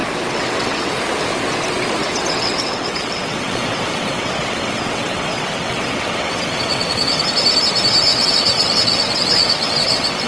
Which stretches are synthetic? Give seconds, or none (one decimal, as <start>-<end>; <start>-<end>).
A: 0.0-1.0; 2.0-7.2; 8.1-10.3